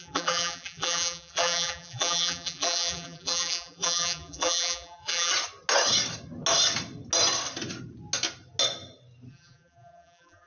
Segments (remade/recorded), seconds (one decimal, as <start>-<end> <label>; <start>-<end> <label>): 0.0-5.3 remade; 5.3-9.3 recorded; 9.3-10.5 remade